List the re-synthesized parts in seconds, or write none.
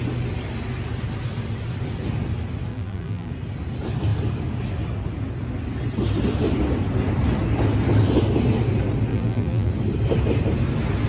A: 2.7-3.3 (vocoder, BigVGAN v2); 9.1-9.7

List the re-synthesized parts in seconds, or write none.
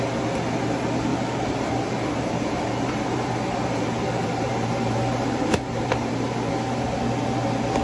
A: 1.1-5.8 (vocoder, BigVGAN v2)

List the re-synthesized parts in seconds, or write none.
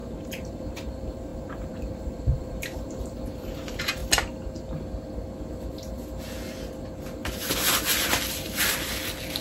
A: 0.0-4.0 (vocoder, BigVGAN v2)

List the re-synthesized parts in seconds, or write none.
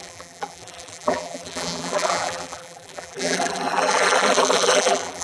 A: 0.0-5.2 (vocoder, BigVGAN v2)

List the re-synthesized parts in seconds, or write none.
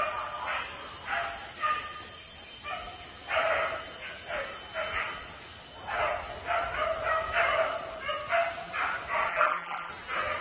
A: 9.3-9.9 (vocoder, BigVGAN v2)